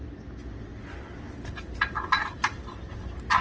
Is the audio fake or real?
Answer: real